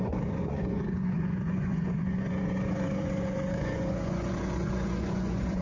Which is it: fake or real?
fake